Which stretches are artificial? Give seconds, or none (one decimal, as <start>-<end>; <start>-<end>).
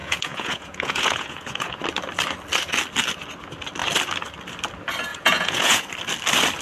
0.0-1.8; 5.1-5.8